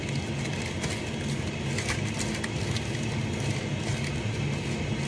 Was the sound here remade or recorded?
recorded